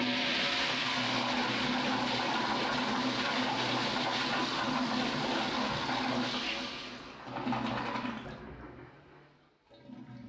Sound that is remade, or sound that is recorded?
recorded